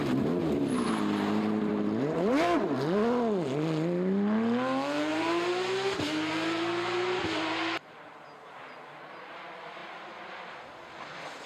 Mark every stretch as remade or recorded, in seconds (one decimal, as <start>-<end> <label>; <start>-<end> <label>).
0.0-1.7 recorded; 1.7-2.6 remade; 2.6-5.1 recorded; 5.1-6.3 remade; 6.3-11.5 recorded